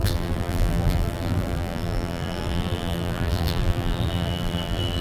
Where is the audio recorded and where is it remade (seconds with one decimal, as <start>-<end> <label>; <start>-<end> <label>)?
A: 0.0-5.0 remade